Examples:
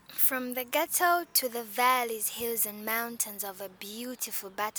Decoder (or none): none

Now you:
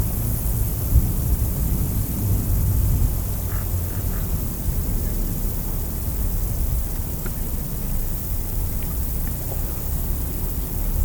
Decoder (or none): none